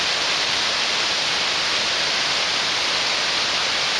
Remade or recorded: recorded